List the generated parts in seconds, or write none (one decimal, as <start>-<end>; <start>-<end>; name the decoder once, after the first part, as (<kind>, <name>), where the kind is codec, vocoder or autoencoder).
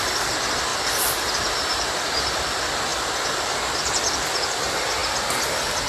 none